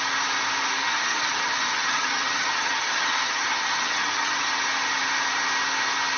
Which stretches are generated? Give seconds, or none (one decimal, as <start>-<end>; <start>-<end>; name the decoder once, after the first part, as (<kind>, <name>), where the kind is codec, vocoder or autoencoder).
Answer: 0.8-4.5 (vocoder, HiFi-GAN)